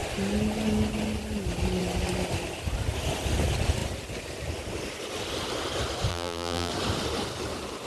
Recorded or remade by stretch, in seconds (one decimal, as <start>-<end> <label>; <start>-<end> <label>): 0.0-6.1 recorded; 6.1-6.7 remade; 6.7-7.9 recorded